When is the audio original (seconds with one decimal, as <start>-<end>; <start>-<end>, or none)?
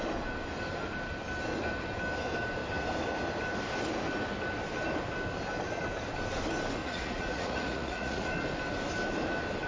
0.0-6.8; 8.3-9.7